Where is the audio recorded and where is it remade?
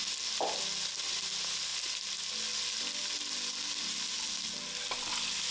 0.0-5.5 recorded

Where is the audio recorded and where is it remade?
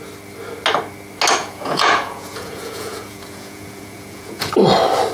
0.0-1.4 recorded; 1.4-4.5 remade; 4.5-5.1 recorded